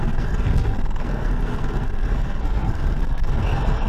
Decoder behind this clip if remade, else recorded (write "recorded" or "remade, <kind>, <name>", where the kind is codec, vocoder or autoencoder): remade, codec, SNAC